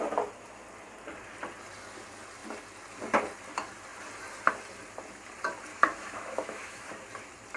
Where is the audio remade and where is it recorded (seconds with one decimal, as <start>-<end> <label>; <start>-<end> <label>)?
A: 0.0-5.7 recorded; 5.7-6.9 remade; 6.9-7.6 recorded